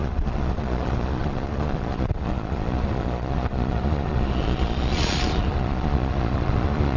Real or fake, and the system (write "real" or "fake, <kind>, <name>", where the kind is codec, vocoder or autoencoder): fake, vocoder, Vocos